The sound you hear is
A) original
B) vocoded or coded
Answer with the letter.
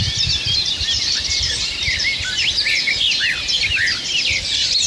A